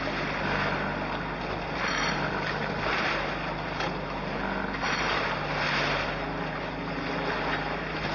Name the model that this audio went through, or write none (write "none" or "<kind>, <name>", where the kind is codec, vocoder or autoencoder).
none